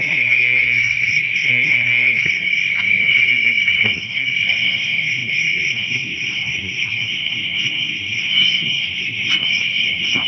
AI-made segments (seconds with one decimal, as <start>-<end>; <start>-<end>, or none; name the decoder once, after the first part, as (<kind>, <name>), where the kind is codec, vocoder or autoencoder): 0.0-10.3 (codec, SNAC)